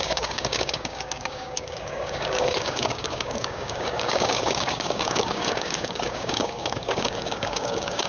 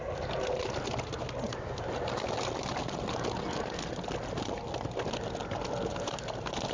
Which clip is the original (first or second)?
second